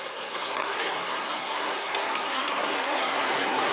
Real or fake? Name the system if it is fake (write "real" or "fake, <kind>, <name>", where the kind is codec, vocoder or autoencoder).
fake, codec, SNAC